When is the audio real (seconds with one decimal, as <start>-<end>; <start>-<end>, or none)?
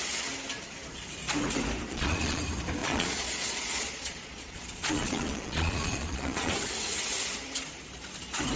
0.0-1.9; 2.4-2.8; 6.5-8.6